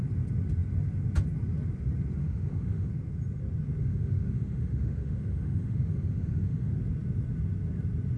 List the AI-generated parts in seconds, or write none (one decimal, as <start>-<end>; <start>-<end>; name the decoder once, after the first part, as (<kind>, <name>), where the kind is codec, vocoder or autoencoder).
2.2-2.9 (autoencoder, DAC-VAE); 3.8-6.7